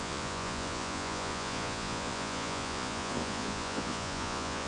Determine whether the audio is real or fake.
fake